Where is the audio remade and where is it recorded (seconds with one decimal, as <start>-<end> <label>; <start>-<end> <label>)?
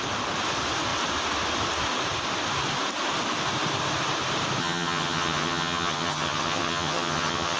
0.0-4.6 recorded; 4.6-7.6 remade